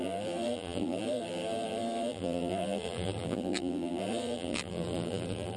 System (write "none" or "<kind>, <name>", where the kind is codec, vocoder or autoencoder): vocoder, BigVGAN v2